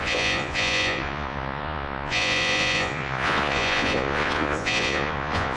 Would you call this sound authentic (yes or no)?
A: no